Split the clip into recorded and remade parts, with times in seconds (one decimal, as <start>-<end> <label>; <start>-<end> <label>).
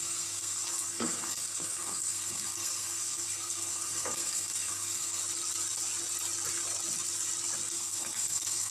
0.0-5.2 remade; 5.2-7.7 recorded; 7.7-8.7 remade